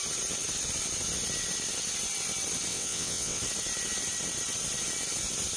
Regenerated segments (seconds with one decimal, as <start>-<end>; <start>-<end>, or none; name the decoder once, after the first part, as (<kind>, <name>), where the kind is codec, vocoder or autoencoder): 2.7-3.4 (vocoder, WaveNeXt)